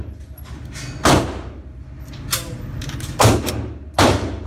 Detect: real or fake real